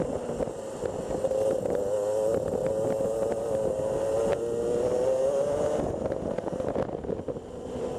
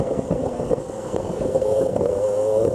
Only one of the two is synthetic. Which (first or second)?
second